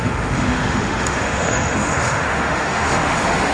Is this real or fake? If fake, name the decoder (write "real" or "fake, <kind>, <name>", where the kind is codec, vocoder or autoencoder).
fake, autoencoder, DAC-VAE